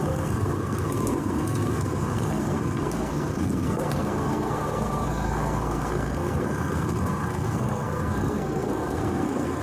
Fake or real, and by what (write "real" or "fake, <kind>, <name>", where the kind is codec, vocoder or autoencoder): fake, codec, SNAC